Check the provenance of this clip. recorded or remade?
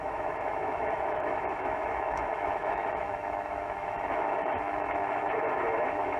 remade